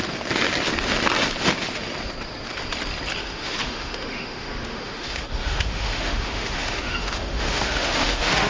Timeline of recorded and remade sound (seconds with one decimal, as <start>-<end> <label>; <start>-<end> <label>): 0.0-3.2 recorded; 3.2-8.5 remade